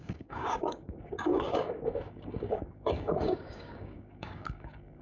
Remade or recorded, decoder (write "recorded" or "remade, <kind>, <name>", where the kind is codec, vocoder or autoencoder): remade, codec, DAC